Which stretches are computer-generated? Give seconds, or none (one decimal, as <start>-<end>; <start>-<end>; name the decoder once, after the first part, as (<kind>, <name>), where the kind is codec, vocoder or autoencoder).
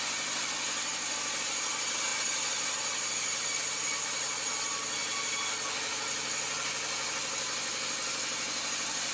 none